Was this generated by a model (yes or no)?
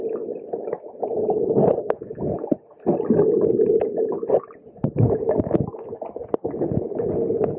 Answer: no